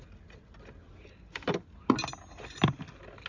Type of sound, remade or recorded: recorded